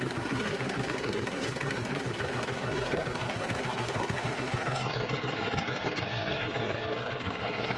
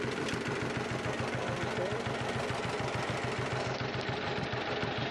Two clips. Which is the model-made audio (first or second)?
first